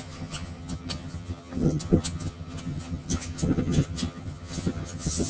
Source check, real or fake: fake